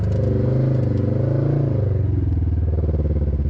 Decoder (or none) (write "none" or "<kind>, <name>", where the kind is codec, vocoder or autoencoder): none